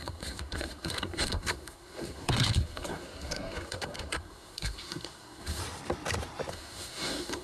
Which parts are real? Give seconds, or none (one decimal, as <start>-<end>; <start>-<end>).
5.6-6.5